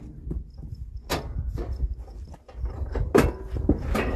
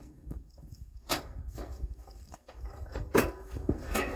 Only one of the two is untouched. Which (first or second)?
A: first